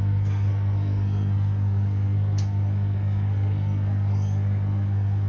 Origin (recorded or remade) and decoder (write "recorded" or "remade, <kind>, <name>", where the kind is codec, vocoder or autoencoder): remade, codec, SNAC